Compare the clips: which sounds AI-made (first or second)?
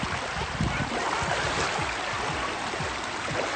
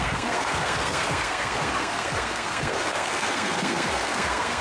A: second